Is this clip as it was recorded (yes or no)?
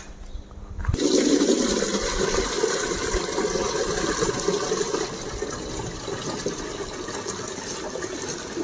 yes